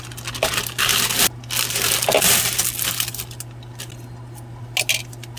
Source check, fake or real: real